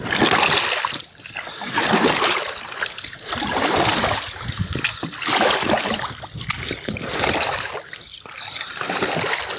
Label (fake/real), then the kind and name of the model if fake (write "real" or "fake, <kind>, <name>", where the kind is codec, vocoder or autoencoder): real